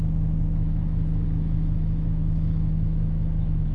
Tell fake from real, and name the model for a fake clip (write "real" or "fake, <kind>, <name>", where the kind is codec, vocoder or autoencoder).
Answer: fake, autoencoder, DAC-VAE